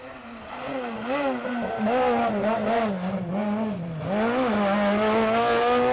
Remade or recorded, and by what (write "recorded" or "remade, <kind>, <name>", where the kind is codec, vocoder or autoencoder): recorded